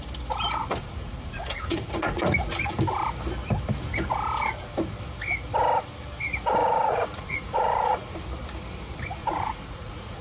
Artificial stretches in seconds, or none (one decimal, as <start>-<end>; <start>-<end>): 0.6-2.7; 6.6-8.2; 9.2-10.2